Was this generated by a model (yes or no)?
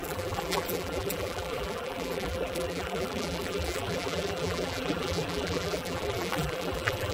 yes